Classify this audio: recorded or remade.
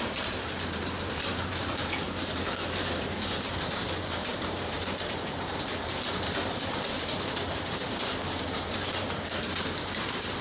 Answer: remade